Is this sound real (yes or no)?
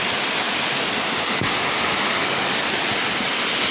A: yes